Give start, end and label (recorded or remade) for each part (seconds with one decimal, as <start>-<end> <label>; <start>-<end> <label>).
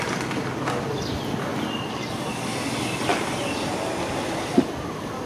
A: 0.0-5.3 recorded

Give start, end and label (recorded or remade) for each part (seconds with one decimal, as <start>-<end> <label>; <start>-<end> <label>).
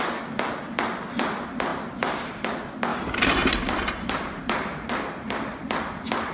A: 0.0-2.9 recorded; 2.9-4.9 remade; 4.9-6.3 recorded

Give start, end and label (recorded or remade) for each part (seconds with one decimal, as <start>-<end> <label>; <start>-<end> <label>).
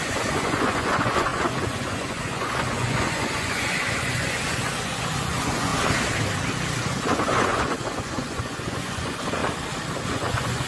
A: 0.0-5.7 remade; 5.7-6.8 recorded; 6.8-9.4 remade; 9.4-10.0 recorded; 10.0-10.7 remade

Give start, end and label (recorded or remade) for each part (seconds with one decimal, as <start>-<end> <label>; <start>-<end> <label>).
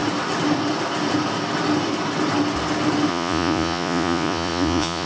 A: 0.0-3.1 recorded; 3.1-5.1 remade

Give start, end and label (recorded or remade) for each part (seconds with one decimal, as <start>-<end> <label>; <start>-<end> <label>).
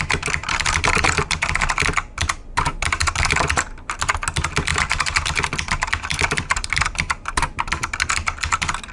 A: 0.0-0.4 recorded; 0.4-1.6 remade; 1.6-4.7 recorded; 4.7-7.4 remade; 7.4-8.9 recorded